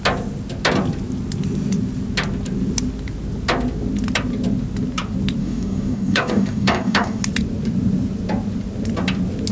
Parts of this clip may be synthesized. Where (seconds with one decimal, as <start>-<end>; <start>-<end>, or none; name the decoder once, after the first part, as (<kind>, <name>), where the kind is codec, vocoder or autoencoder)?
5.4-7.2 (codec, DAC)